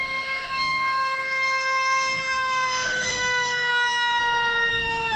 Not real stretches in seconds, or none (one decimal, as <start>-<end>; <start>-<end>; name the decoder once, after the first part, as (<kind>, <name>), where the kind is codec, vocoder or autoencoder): 0.0-4.2 (autoencoder, DAC-VAE); 4.7-5.2